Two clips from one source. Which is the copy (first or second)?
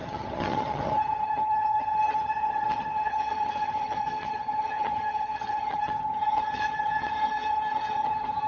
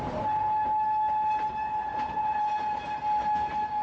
first